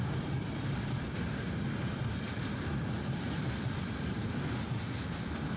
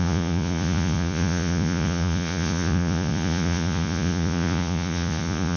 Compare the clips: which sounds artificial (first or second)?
second